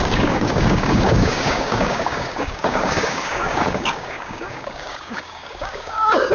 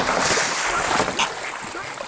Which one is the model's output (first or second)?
first